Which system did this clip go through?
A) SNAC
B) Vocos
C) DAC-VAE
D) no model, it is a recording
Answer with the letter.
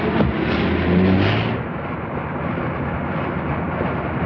D